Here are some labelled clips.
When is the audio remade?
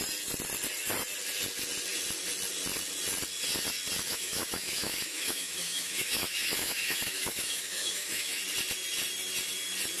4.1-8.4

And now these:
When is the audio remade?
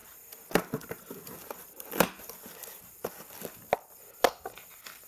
0.0-3.1